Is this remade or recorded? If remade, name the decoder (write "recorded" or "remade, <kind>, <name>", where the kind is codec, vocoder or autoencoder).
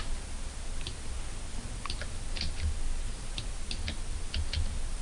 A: recorded